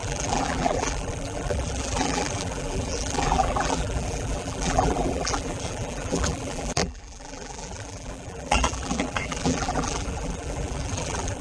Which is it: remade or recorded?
remade